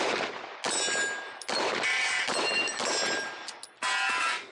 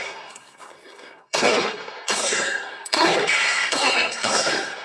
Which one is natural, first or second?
first